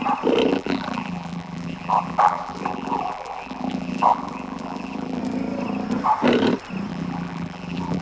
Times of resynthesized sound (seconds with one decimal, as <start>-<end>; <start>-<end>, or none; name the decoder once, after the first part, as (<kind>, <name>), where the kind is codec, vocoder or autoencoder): 0.5-5.2 (vocoder, BigVGAN v2); 6.9-8.0